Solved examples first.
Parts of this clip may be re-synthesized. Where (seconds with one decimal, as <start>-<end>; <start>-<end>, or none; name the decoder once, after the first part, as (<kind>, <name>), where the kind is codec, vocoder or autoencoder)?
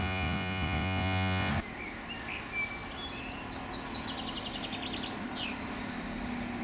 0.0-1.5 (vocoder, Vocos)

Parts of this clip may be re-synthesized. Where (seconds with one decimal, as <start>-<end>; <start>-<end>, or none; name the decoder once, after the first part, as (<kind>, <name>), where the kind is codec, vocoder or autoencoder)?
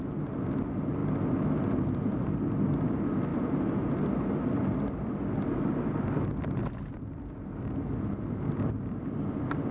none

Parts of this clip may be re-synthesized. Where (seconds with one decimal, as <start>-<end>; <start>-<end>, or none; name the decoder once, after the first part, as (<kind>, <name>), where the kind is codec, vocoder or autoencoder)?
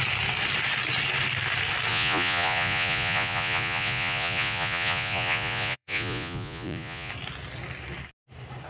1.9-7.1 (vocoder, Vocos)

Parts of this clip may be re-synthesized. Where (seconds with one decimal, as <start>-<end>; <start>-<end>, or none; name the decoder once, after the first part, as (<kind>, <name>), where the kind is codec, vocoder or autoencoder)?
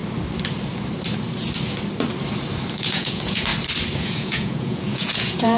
2.7-3.5 (vocoder, Vocos); 4.0-5.6